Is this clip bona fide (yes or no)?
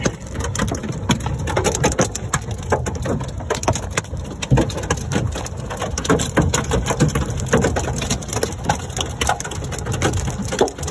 yes